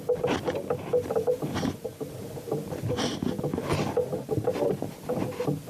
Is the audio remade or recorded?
recorded